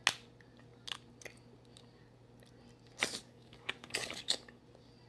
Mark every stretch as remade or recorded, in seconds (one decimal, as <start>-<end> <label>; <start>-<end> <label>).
0.0-3.2 recorded; 3.2-4.6 remade; 4.6-5.1 recorded